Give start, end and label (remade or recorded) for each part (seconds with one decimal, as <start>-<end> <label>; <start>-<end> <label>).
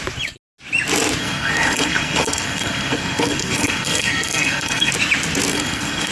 0.0-1.2 recorded; 1.2-4.9 remade; 4.9-5.5 recorded; 5.5-6.1 remade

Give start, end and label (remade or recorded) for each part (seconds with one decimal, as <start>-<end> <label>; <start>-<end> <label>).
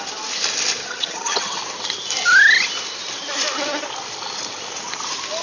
0.0-0.8 recorded; 0.8-1.6 remade; 1.6-5.4 recorded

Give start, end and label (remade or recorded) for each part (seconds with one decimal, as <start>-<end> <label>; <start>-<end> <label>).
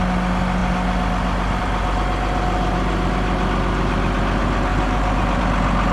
0.0-4.7 recorded; 4.7-5.4 remade; 5.4-5.9 recorded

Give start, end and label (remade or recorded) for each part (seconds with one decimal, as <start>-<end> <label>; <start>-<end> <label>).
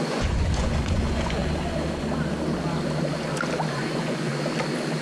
0.0-1.4 remade; 1.4-3.7 recorded; 3.7-4.3 remade; 4.3-5.0 recorded